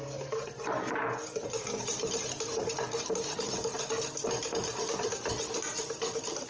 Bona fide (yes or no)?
no